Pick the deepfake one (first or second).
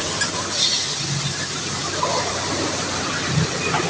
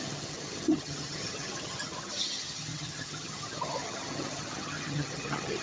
second